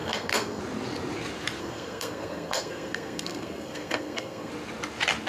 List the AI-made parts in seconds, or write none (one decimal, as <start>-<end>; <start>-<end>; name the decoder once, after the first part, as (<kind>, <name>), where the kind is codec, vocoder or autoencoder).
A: 0.0-0.6 (codec, SNAC); 1.6-4.5